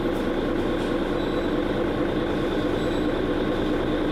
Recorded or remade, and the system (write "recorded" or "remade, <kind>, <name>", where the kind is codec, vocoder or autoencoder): recorded